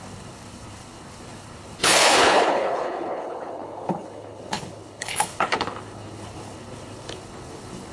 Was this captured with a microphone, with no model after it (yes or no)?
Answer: no